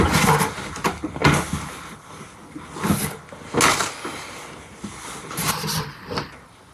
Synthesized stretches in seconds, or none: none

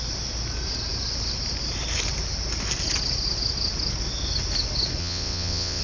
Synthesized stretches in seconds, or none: 5.0-5.8 (vocoder, WaveNeXt)

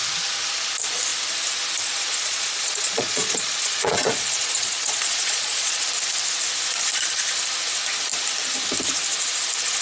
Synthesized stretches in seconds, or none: 2.2-5.8 (vocoder, Vocos)

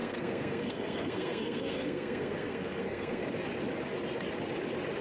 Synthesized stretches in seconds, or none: 0.0-3.2 (codec, SNAC)